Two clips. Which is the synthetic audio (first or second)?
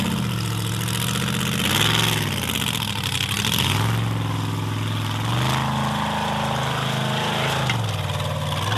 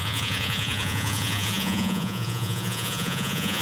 second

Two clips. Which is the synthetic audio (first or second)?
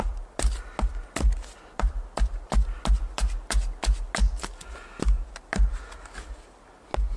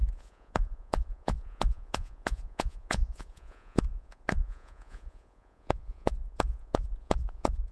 second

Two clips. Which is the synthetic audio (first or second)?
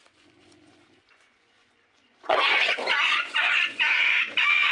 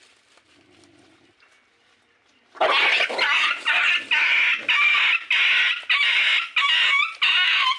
first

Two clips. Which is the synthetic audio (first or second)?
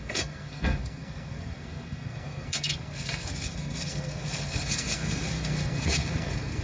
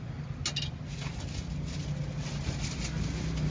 first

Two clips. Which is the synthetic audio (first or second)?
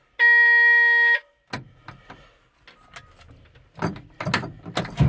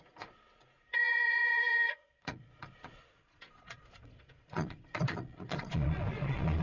second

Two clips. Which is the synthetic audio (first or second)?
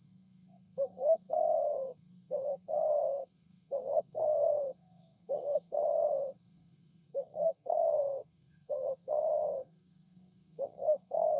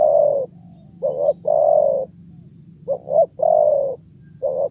first